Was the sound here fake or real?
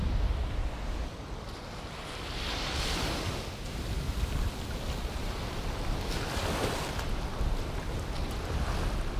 real